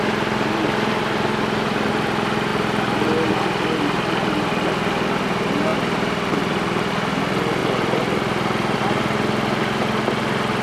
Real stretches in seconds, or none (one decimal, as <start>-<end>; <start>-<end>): 0.0-10.6